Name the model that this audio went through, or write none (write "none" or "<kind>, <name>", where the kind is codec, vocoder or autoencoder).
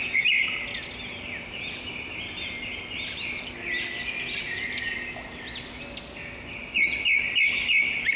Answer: none